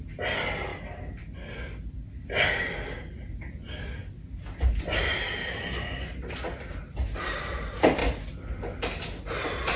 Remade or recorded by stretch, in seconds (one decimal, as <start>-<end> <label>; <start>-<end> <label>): 0.0-9.8 recorded